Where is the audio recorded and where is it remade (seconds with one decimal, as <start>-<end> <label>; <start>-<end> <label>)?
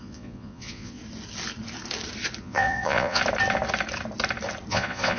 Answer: 0.0-1.0 remade; 1.0-2.4 recorded; 2.4-3.2 remade; 3.2-4.7 recorded; 4.7-5.2 remade